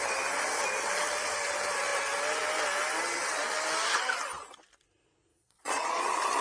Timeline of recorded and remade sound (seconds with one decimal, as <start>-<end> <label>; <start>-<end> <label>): 0.0-5.3 recorded; 5.3-6.0 remade; 6.0-6.4 recorded